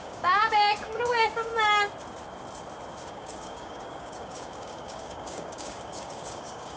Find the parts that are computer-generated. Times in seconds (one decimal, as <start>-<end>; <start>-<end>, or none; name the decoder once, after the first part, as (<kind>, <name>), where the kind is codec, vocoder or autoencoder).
0.0-1.5 (codec, DAC); 3.1-6.8